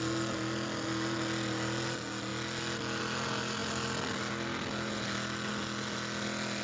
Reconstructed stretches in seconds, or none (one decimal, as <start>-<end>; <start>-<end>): none